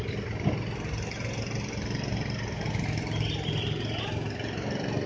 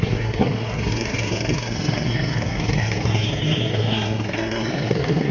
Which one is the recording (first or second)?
first